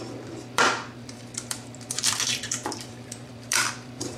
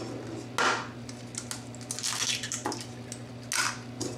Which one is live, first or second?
second